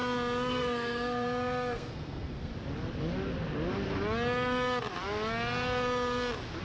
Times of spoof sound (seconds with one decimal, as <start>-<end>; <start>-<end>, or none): 0.5-2.5